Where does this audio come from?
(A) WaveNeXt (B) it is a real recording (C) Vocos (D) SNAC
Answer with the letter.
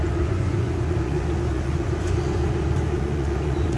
C